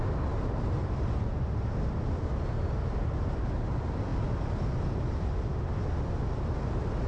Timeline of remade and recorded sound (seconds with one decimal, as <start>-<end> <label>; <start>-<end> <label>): 0.0-7.1 recorded